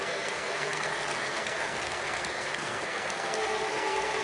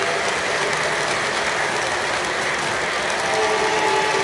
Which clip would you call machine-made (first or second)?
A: first